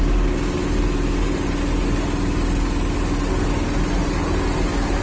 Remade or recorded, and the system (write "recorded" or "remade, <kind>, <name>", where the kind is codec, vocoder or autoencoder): recorded